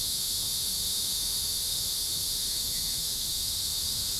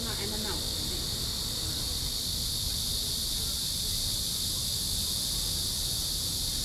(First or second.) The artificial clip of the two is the first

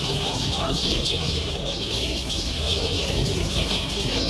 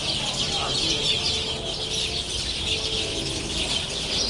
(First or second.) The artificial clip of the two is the first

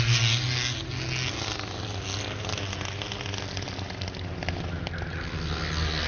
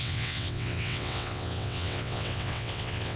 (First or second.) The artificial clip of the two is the second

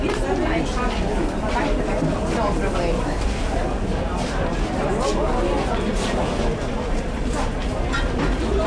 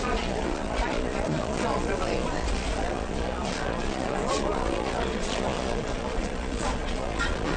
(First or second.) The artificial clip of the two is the second